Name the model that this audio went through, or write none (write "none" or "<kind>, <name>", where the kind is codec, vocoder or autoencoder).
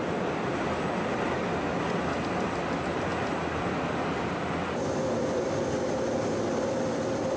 none